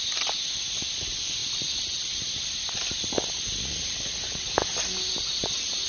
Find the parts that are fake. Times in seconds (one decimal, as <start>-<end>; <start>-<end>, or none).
1.4-3.9